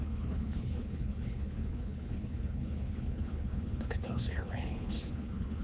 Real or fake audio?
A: fake